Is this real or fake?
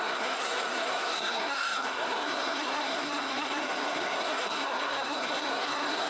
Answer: fake